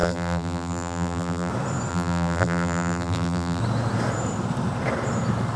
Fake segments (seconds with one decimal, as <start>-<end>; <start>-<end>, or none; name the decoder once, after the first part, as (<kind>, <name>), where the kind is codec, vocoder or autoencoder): 0.0-1.5 (vocoder, BigVGAN v2); 1.9-3.6